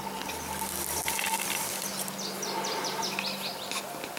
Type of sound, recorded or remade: recorded